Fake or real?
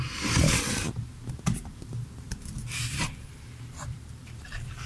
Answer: fake